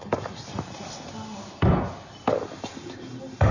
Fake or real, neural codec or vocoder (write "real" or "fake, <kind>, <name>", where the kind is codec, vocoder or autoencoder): real